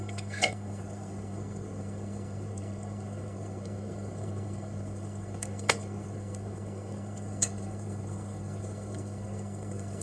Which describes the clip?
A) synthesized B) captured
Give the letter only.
A